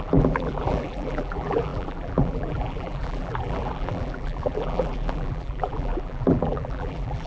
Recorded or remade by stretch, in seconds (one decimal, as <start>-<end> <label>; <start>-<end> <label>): 0.0-7.3 remade